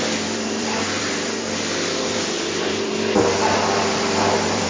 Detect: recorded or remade remade